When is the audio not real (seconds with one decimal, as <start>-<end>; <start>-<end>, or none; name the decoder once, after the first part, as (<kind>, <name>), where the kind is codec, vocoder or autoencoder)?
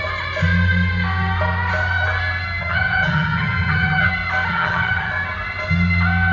2.6-4.1 (vocoder, HiFi-GAN); 4.5-5.1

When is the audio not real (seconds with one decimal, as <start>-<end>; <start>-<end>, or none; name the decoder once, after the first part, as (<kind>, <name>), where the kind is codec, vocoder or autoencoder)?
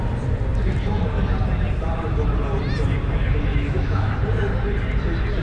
3.5-4.2 (autoencoder, DAC-VAE)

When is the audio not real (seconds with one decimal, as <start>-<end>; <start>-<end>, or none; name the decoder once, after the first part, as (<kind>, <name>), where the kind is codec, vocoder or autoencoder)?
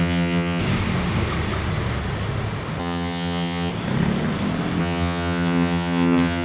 0.0-0.6 (vocoder, HiFi-GAN); 2.8-3.7; 4.8-6.4